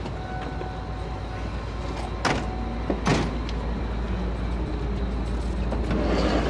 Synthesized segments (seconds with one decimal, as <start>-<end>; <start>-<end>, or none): none